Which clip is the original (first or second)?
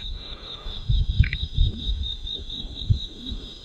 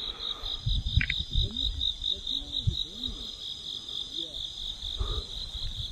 second